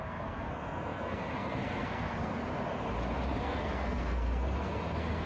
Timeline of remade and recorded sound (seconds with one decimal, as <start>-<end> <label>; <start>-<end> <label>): 0.0-2.4 remade; 2.4-3.4 recorded; 3.4-5.3 remade